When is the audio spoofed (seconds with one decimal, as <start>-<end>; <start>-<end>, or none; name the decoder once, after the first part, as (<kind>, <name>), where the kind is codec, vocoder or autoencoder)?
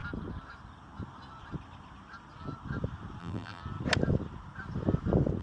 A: 3.2-3.6 (vocoder, BigVGAN v2)